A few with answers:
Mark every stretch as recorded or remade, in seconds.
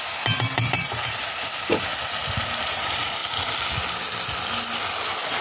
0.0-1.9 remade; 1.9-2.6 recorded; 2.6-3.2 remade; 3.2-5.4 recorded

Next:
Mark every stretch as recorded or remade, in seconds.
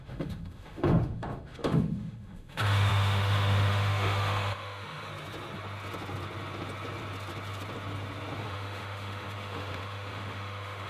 0.0-5.1 remade; 5.1-8.4 recorded; 8.4-10.9 remade